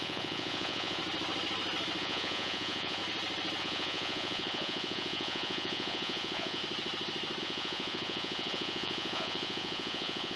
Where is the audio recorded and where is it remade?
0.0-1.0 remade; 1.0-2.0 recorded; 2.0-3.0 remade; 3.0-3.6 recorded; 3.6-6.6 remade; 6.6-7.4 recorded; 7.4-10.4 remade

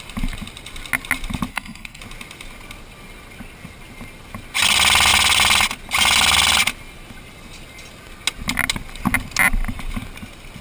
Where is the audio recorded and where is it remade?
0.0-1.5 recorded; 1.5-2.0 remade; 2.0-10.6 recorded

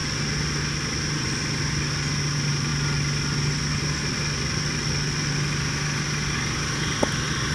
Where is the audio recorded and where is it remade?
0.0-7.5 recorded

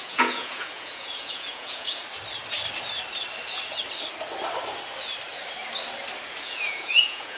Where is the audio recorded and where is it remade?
0.0-2.0 remade; 2.0-6.4 recorded; 6.4-7.4 remade

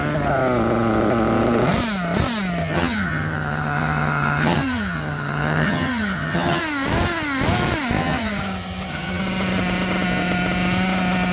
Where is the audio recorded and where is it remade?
0.0-2.6 recorded; 2.6-6.6 remade; 6.6-8.0 recorded; 8.0-9.2 remade; 9.2-11.3 recorded

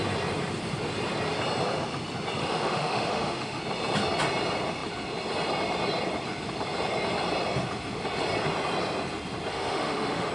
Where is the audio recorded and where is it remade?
0.0-2.4 recorded; 2.4-3.6 remade; 3.6-9.5 recorded; 9.5-10.3 remade

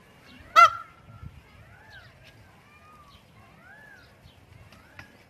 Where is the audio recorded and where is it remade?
0.0-5.3 recorded